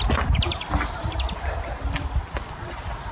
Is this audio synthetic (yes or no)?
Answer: no